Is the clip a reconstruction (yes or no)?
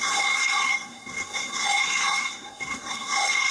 yes